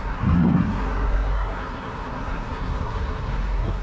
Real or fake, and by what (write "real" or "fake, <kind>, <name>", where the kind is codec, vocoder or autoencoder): fake, codec, SNAC